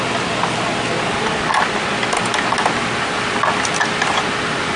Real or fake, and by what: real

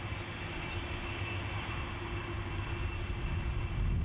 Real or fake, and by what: real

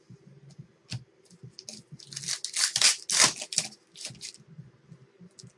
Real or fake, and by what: real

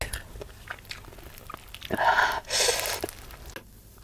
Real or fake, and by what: real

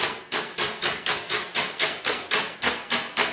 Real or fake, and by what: fake, codec, SNAC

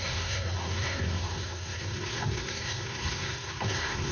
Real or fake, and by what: fake, codec, SNAC